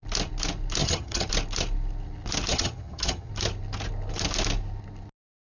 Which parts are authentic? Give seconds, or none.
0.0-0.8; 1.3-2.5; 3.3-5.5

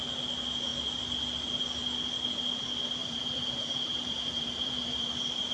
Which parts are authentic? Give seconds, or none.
0.0-3.0; 5.1-5.5

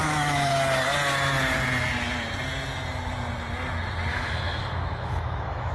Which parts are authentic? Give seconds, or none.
0.5-4.1

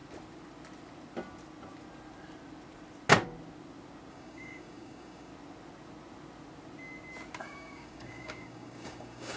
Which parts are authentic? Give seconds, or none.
0.0-4.1; 5.3-7.4

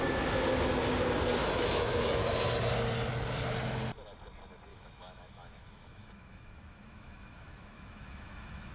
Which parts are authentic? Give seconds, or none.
0.0-1.4; 2.2-4.7

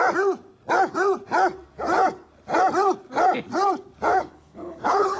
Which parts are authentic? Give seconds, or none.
0.0-4.1

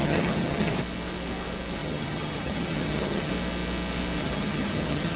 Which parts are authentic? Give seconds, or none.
0.7-1.8; 3.3-4.2

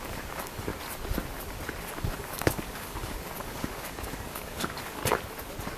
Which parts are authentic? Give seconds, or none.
0.7-1.9; 5.0-5.8